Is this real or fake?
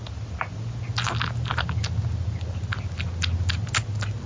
real